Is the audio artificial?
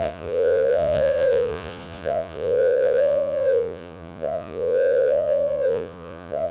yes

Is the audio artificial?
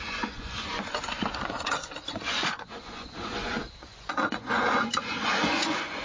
yes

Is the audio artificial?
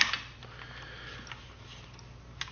no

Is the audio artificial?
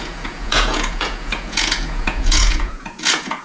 yes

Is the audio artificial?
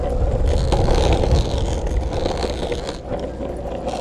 no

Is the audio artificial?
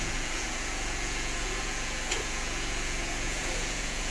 yes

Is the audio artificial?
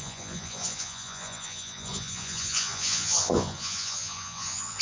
yes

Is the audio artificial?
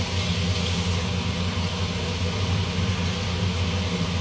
no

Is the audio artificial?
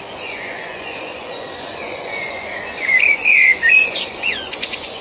yes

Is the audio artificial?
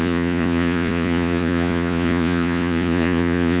yes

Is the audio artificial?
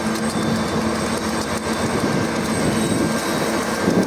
no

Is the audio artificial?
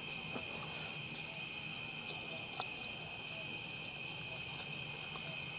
no